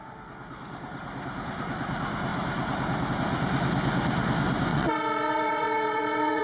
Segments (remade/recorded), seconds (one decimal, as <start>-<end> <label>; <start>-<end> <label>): 0.0-4.7 recorded; 4.7-6.4 remade